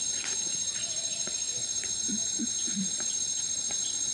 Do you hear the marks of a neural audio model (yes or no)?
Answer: yes